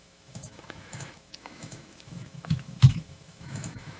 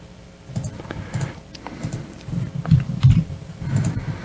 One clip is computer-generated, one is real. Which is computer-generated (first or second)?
first